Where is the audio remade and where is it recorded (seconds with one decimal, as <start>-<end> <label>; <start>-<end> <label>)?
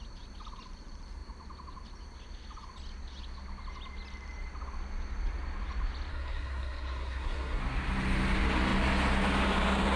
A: 0.0-6.1 recorded; 6.1-7.6 remade; 7.6-10.0 recorded